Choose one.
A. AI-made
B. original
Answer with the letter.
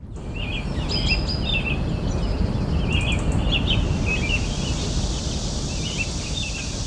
B